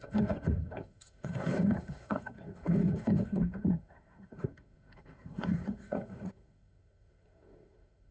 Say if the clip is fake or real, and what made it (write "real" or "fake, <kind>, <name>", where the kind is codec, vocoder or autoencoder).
fake, codec, SNAC